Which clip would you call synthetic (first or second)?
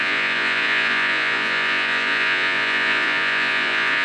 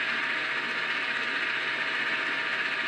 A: first